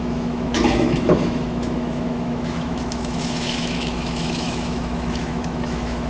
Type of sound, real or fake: fake